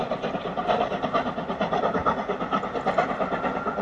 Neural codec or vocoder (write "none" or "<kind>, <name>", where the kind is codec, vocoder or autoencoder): none